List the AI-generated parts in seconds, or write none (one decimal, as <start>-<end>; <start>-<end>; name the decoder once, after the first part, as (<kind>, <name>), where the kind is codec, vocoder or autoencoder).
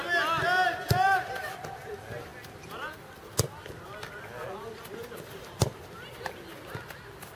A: none